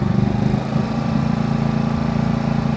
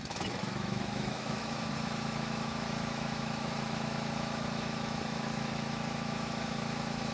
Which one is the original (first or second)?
first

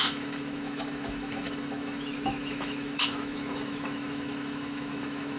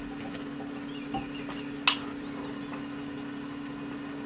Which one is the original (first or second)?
second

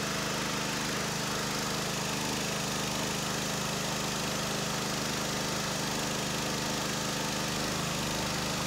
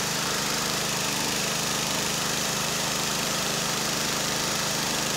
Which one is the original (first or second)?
first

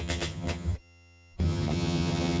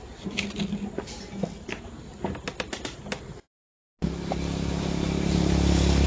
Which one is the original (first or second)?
second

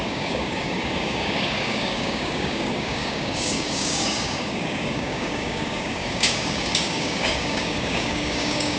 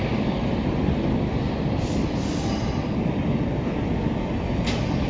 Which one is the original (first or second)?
second